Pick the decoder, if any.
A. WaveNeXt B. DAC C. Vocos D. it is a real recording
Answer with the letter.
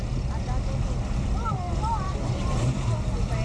D